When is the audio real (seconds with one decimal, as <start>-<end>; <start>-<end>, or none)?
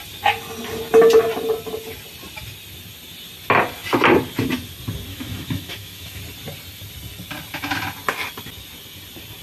0.0-5.1; 6.2-9.4